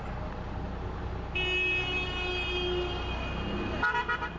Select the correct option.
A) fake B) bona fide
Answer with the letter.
B